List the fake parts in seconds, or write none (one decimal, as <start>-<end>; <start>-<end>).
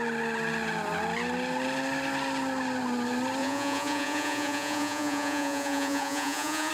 3.4-6.7